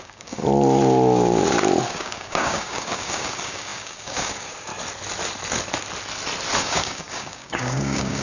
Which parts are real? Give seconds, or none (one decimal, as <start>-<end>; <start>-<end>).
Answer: 0.4-1.9; 4.7-6.6